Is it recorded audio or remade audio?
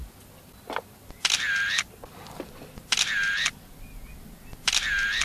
recorded